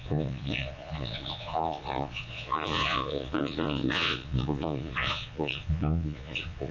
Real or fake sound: fake